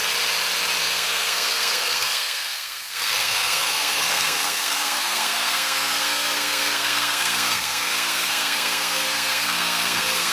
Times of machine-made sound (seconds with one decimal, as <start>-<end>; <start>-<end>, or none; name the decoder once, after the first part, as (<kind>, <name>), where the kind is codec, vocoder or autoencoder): 0.8-10.3 (codec, SNAC)